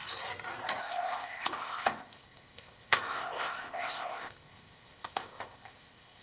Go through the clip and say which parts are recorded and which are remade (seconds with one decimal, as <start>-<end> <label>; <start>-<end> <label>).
0.0-0.8 recorded; 0.8-6.2 remade